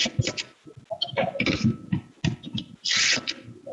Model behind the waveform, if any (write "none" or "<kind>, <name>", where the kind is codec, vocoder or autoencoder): none